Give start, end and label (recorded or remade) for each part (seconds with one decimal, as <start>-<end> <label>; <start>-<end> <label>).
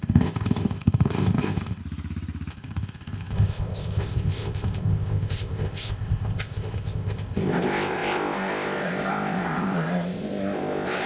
0.0-1.8 remade; 1.8-2.5 recorded; 2.5-11.1 remade